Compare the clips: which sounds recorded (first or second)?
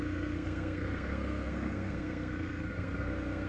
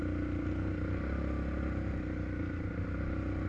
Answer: second